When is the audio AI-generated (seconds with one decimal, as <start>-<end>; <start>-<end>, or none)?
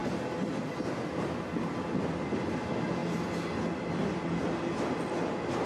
none